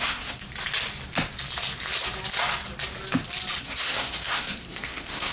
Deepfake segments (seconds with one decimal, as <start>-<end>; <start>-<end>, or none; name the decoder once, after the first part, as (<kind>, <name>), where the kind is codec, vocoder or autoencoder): 0.0-0.4 (codec, SNAC); 3.6-5.3